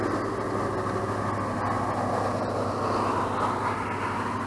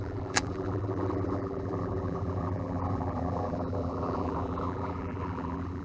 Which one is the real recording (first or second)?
first